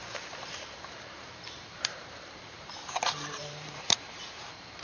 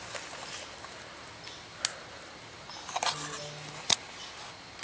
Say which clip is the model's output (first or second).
first